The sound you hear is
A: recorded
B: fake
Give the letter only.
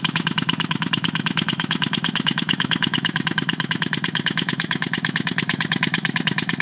B